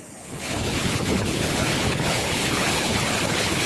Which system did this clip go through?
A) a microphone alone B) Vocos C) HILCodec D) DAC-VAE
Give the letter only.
C